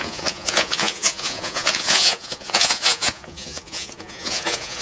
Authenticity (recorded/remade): remade